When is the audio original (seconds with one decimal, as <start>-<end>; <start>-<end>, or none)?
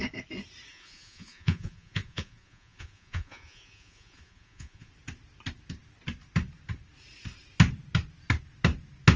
0.0-0.7; 4.9-9.2